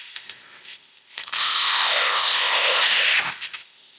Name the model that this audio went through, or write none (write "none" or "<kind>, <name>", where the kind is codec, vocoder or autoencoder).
codec, ZipCodec